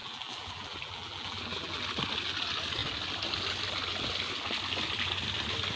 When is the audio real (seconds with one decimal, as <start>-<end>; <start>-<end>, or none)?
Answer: 1.8-5.8